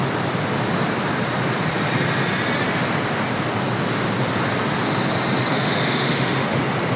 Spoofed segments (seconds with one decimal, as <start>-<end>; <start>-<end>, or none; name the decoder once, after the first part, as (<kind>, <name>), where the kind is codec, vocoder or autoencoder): 5.5-6.6 (autoencoder, DAC-VAE)